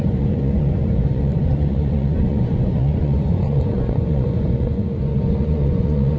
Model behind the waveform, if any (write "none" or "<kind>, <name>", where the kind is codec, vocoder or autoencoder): vocoder, Vocos